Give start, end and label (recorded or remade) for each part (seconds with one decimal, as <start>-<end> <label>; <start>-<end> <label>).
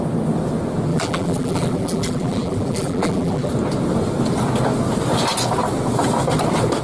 0.0-0.9 recorded; 0.9-3.5 remade; 3.5-6.8 recorded